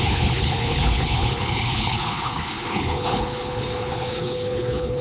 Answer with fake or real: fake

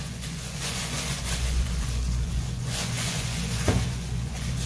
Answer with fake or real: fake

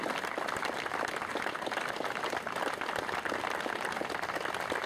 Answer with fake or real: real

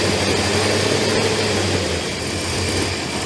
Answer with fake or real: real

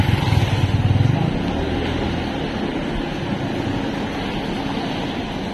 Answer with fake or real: real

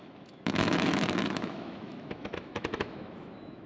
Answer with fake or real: fake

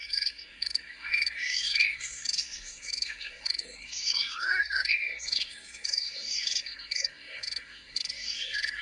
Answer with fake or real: fake